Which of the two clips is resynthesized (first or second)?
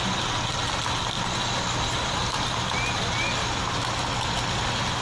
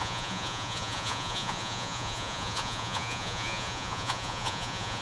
second